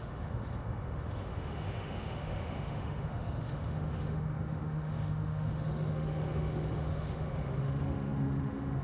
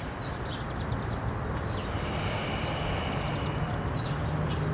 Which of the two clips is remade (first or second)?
first